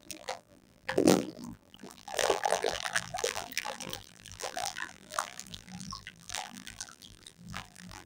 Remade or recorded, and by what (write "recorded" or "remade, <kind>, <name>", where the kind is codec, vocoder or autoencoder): remade, vocoder, BigVGAN v2